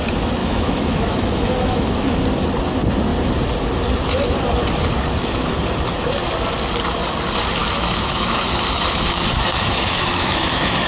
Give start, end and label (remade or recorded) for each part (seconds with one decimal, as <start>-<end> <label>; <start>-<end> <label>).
0.0-0.4 recorded; 0.4-2.2 remade; 2.2-7.6 recorded; 7.6-10.9 remade